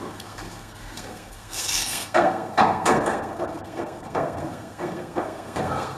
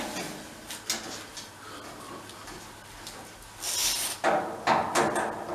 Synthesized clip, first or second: first